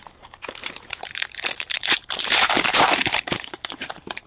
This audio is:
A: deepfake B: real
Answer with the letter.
A